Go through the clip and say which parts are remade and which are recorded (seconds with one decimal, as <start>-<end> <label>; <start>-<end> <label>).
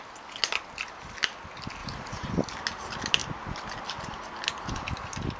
0.0-1.8 recorded; 1.8-2.3 remade; 2.3-5.4 recorded